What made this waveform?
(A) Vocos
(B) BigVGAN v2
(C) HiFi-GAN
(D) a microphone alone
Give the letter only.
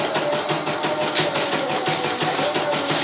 D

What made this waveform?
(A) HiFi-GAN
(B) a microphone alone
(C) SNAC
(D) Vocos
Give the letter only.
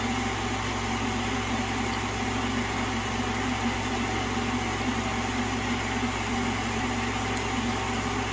B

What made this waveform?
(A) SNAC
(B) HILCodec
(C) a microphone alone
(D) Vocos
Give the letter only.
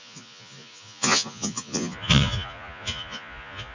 D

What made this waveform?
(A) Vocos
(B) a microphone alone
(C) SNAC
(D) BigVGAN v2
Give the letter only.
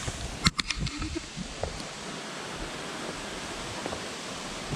B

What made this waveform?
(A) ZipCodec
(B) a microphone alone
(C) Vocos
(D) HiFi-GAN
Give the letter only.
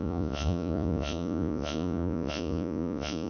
C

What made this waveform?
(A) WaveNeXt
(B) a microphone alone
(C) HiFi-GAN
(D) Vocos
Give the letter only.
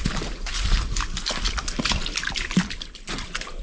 B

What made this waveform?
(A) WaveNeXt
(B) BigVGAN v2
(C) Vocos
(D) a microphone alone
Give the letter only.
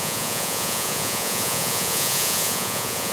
C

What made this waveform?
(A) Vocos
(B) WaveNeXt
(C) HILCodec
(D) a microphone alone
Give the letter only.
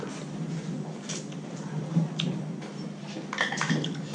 D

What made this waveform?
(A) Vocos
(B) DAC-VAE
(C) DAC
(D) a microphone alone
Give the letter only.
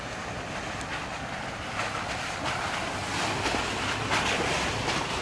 D